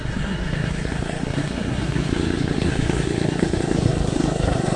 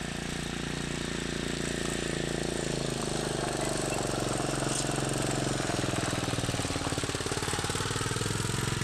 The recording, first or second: second